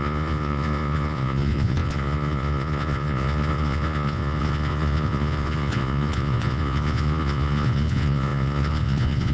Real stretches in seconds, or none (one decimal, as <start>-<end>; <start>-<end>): none